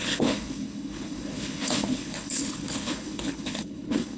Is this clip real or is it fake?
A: fake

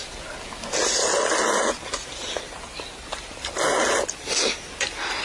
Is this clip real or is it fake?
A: real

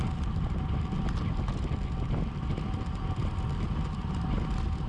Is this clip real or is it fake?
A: real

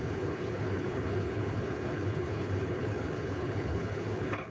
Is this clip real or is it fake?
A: fake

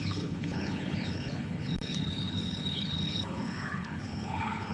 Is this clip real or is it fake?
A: fake